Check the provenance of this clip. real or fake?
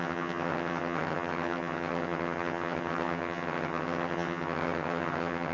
fake